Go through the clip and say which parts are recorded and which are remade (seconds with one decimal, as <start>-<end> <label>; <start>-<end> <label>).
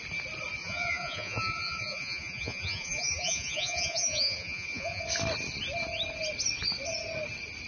0.0-0.6 recorded; 0.6-5.0 remade; 5.0-7.7 recorded